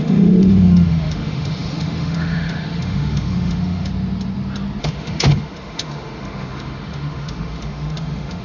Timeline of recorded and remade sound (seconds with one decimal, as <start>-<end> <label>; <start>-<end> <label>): 0.0-3.9 remade; 3.9-4.8 recorded; 4.8-8.4 remade